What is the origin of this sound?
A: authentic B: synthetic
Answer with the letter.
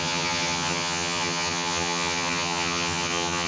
B